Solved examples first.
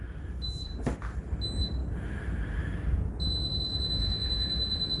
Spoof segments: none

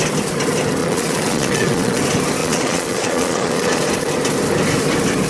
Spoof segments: 0.8-2.0 (vocoder, Vocos); 2.4-3.8

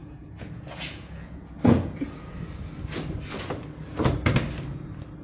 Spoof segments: 0.0-2.4 (vocoder, Vocos)

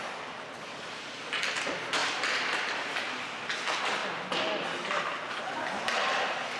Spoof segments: none